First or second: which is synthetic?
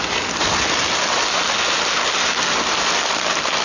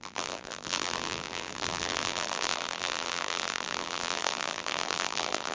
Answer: second